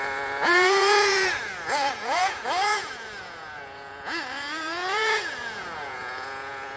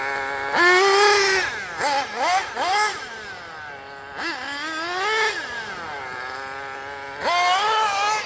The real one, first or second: second